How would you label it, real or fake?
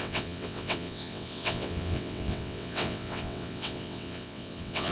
fake